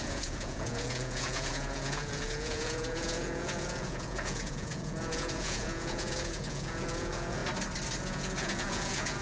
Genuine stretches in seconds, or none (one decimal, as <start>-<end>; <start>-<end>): 7.4-8.0